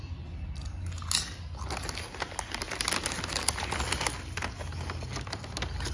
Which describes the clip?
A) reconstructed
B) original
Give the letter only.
B